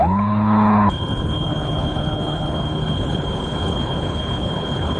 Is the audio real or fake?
fake